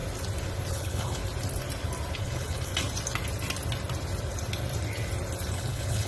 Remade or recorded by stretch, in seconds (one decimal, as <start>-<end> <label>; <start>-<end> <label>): 0.0-0.7 recorded; 0.7-1.2 remade; 1.2-2.2 recorded; 2.2-2.7 remade; 2.7-5.5 recorded; 5.5-6.1 remade